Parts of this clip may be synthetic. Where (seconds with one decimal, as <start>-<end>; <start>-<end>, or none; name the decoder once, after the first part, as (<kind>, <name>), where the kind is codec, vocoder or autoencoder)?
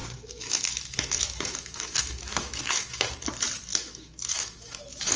0.0-3.1 (autoencoder, DAC-VAE); 3.7-5.2